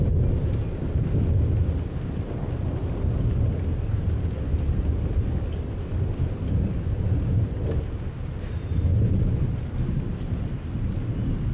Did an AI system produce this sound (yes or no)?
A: no